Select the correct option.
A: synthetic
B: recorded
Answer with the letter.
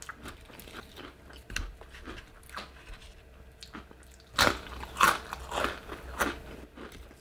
B